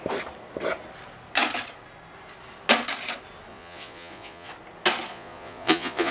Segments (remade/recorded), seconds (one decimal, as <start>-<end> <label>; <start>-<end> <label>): 0.0-3.5 recorded; 3.5-4.5 remade; 4.5-5.1 recorded; 5.1-6.1 remade